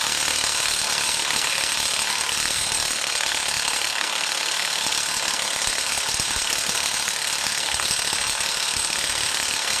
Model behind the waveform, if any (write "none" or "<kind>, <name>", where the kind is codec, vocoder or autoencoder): codec, SNAC